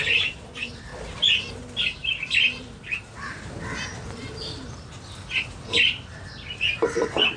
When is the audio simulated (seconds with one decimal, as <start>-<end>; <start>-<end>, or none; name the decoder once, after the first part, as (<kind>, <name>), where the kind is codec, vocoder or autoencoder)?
0.0-0.9 (vocoder, BigVGAN v2); 3.3-4.9; 6.5-7.4

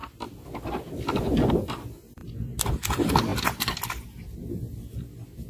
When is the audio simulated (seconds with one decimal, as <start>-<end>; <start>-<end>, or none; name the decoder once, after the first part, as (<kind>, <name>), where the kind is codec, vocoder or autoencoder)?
none

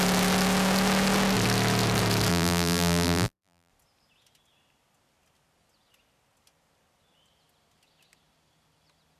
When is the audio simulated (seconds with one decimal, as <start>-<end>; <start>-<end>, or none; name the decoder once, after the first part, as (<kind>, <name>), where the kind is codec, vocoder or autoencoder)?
2.3-3.7 (vocoder, BigVGAN v2)

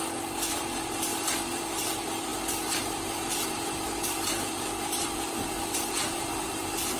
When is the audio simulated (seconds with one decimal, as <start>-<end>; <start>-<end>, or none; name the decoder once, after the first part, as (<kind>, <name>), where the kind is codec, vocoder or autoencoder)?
0.5-7.0 (vocoder, BigVGAN v2)

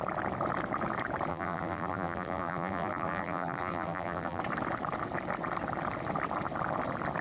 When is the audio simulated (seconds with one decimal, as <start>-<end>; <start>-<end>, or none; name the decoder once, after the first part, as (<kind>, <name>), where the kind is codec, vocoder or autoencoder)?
1.3-4.4 (vocoder, BigVGAN v2)

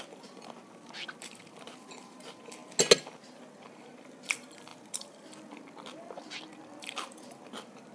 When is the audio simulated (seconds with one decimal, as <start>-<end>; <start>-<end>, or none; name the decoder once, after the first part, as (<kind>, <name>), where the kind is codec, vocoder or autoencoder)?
0.0-2.6 (vocoder, BigVGAN v2); 3.3-7.9

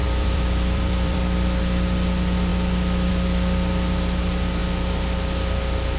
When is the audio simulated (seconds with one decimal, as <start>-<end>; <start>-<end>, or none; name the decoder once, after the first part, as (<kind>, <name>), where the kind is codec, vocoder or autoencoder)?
0.0-1.6 (vocoder, BigVGAN v2)